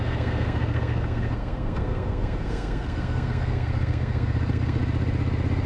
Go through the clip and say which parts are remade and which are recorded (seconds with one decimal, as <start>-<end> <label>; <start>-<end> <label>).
0.0-4.8 remade; 4.8-5.7 recorded